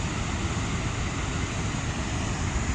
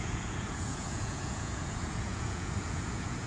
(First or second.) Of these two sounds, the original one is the first